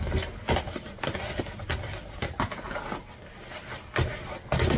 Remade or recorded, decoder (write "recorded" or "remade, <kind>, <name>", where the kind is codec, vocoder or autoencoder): recorded